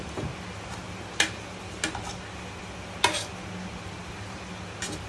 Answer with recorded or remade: recorded